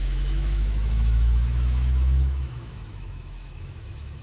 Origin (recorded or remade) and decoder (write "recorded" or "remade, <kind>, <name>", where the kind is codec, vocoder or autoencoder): remade, autoencoder, DAC-VAE